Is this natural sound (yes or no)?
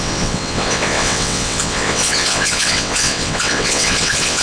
no